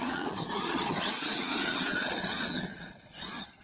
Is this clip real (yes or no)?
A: no